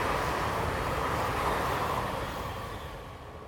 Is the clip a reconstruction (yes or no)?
no